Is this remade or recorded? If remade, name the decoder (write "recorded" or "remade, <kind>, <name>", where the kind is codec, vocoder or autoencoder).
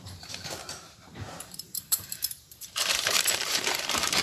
remade, vocoder, BigVGAN v2